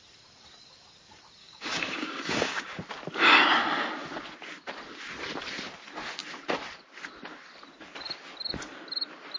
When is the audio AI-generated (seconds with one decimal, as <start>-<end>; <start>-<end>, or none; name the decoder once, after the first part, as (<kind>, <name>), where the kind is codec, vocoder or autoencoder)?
1.4-2.8 (codec, DAC)